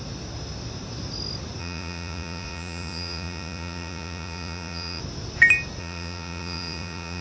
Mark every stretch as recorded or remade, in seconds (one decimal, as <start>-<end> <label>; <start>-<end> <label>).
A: 0.0-1.6 recorded; 1.6-5.0 remade; 5.0-5.8 recorded; 5.8-7.2 remade